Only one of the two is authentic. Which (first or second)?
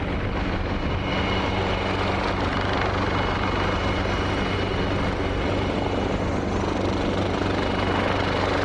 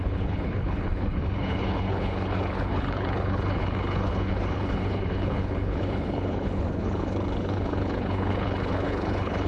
first